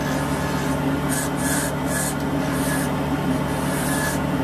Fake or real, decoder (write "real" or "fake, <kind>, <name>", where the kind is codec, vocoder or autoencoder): real